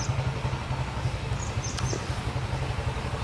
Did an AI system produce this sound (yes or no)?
no